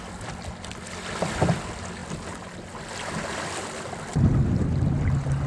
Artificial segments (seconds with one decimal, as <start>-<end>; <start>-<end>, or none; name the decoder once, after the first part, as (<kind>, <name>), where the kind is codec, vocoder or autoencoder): none